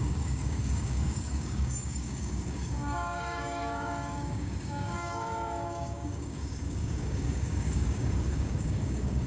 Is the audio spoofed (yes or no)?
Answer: yes